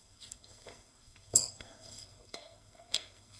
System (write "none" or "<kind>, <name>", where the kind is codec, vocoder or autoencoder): codec, SNAC